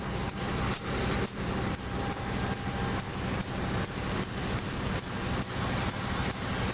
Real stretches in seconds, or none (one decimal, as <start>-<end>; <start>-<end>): 0.0-6.7